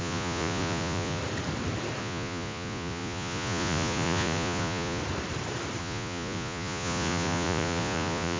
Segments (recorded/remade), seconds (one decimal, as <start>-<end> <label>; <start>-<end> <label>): 0.0-1.2 remade; 1.2-2.0 recorded; 2.0-5.0 remade; 5.0-5.8 recorded; 5.8-8.4 remade